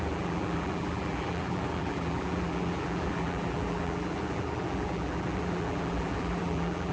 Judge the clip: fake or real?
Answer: fake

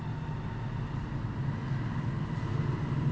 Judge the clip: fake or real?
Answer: real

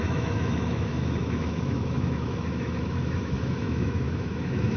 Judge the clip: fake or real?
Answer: fake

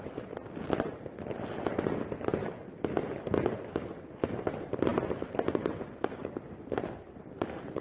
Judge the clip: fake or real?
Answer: real